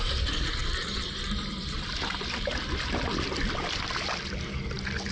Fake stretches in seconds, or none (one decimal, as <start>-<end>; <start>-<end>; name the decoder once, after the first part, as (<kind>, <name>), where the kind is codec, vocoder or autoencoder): none